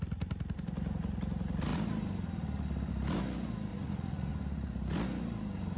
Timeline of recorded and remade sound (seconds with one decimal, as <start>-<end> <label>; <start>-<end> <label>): 0.0-3.7 recorded; 3.7-4.3 remade; 4.3-5.8 recorded

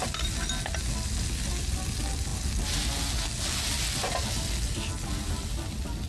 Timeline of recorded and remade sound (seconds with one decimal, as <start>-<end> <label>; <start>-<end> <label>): 0.0-6.1 recorded

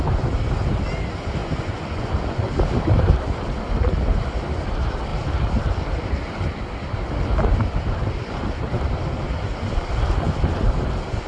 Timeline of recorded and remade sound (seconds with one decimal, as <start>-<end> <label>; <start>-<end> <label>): 0.0-1.4 recorded; 1.4-2.1 remade; 2.1-11.3 recorded